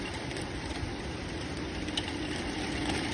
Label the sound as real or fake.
real